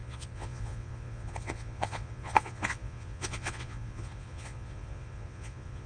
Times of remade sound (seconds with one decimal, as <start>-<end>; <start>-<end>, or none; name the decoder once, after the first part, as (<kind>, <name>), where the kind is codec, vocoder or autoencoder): 0.0-5.9 (vocoder, Vocos)